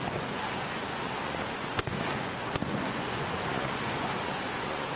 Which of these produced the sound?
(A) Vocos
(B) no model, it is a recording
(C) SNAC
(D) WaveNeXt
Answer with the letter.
A